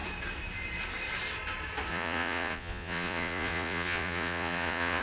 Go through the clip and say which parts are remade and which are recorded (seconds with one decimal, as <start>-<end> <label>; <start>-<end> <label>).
0.0-1.9 recorded; 1.9-5.0 remade